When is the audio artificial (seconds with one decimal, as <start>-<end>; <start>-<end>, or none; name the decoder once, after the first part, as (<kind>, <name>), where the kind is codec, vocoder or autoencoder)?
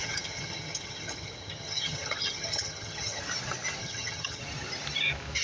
0.0-3.2 (vocoder, HiFi-GAN); 3.8-4.4